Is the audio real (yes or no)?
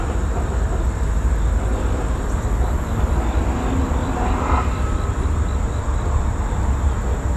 yes